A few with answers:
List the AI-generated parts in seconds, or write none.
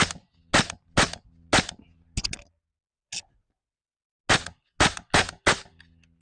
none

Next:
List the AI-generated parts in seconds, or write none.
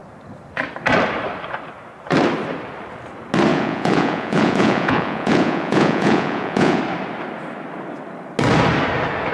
3.5-6.8 (vocoder, Vocos)